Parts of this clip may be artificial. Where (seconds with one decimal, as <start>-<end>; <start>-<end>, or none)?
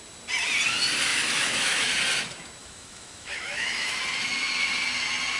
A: 1.1-1.8; 2.6-4.0